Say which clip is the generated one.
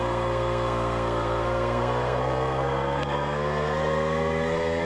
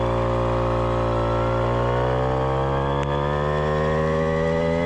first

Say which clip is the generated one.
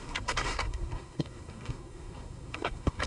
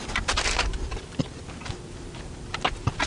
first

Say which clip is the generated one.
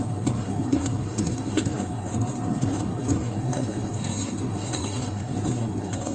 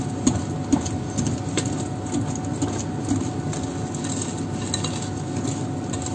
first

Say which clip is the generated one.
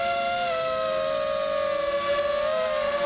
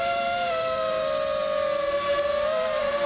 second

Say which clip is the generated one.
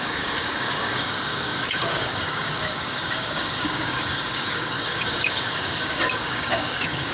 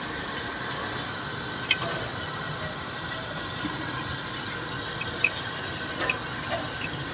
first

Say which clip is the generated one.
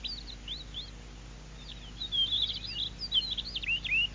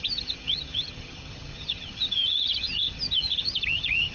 second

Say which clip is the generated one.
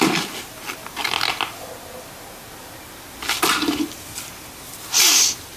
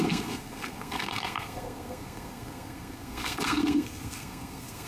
second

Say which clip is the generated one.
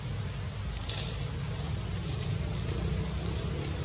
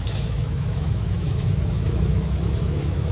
second